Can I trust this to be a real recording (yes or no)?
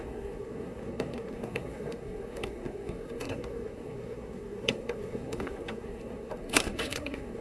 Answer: no